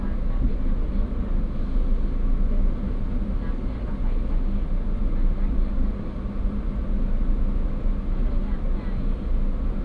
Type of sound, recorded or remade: recorded